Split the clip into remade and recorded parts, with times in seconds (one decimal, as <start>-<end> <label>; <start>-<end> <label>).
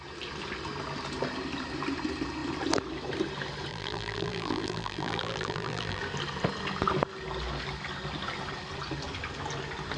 0.0-3.7 recorded; 3.7-6.0 remade; 6.0-10.0 recorded